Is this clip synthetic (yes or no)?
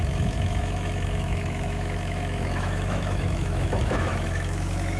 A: yes